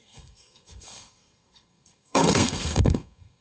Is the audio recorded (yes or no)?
no